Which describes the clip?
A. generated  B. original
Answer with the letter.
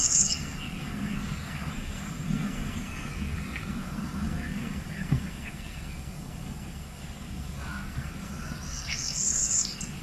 A